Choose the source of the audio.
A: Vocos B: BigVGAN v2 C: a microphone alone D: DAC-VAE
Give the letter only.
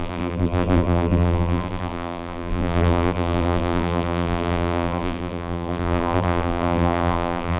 B